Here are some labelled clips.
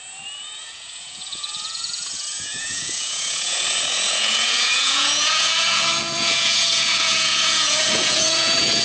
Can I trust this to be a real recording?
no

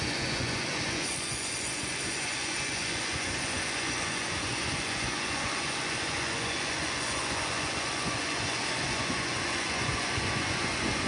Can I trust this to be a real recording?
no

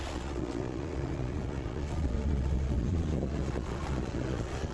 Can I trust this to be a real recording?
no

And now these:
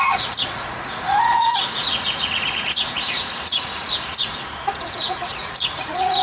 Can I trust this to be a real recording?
no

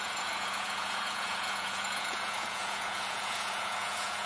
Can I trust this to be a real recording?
no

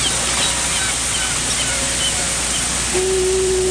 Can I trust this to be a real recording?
yes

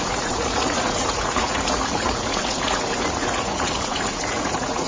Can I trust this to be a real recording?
no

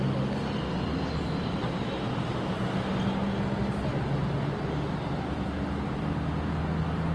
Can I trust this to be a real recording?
yes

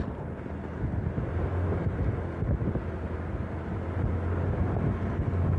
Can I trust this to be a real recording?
yes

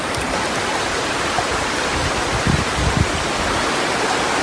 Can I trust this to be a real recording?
yes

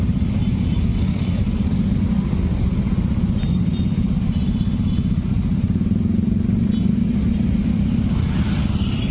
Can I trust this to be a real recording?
yes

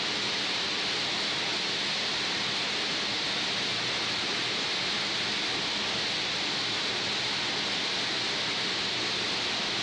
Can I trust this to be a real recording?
yes